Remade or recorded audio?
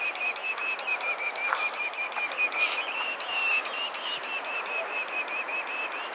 recorded